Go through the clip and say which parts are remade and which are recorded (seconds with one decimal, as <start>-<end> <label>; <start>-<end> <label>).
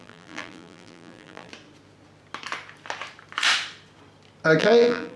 0.0-1.5 remade; 1.5-4.6 recorded; 4.6-5.2 remade